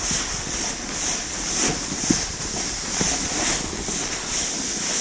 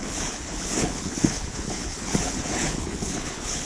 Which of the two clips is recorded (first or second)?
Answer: first